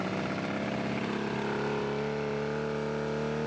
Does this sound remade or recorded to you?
recorded